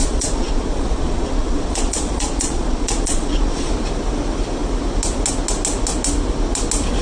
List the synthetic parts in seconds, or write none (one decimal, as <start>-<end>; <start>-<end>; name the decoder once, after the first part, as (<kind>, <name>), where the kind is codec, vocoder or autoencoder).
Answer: 0.0-3.7 (vocoder, Vocos)